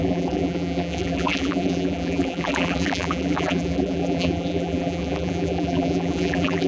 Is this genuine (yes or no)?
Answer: no